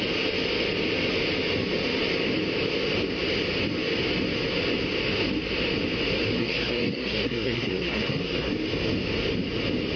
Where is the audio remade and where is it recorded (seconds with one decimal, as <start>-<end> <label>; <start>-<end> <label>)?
0.0-6.4 recorded; 6.4-8.5 remade; 8.5-10.0 recorded